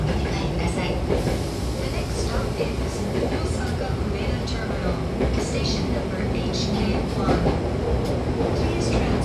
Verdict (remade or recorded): recorded